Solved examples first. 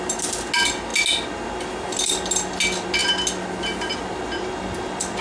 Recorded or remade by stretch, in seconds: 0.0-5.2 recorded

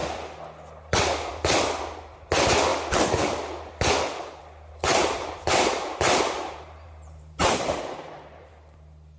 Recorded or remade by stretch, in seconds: 0.0-4.9 recorded; 4.9-8.5 remade; 8.5-9.2 recorded

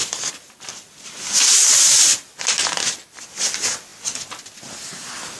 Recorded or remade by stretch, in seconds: 0.0-5.4 recorded

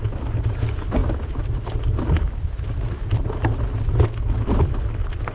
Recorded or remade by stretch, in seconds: 0.0-1.0 recorded; 1.0-3.6 remade; 3.6-5.3 recorded

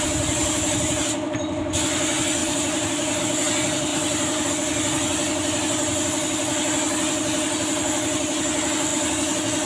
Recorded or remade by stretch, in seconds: 0.0-0.4 recorded; 0.4-0.9 remade; 0.9-2.4 recorded; 2.4-3.2 remade; 3.2-3.9 recorded; 3.9-4.5 remade; 4.5-9.7 recorded